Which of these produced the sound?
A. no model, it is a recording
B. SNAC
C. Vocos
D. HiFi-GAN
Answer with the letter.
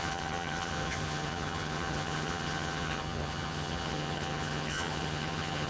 D